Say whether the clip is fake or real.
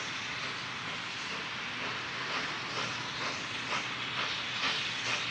real